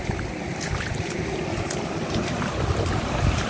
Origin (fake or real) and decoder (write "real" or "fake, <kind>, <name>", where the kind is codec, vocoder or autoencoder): real